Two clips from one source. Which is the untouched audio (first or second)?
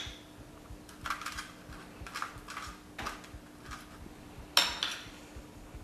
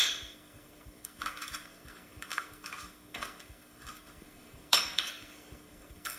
first